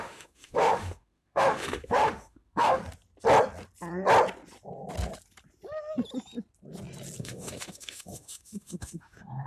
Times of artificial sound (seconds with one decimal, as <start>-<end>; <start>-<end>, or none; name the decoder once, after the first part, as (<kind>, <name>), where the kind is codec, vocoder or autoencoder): 0.0-2.8 (autoencoder, DAC-VAE); 7.2-9.5